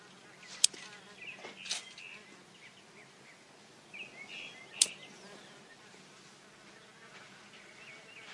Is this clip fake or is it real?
real